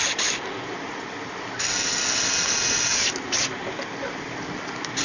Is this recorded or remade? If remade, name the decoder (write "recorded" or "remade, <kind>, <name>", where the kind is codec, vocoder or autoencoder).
recorded